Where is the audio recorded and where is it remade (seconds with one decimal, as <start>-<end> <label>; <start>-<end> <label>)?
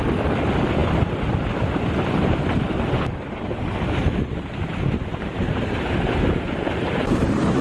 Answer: 0.0-5.1 recorded; 5.1-7.6 remade